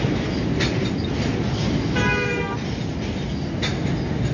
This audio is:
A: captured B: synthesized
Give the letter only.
A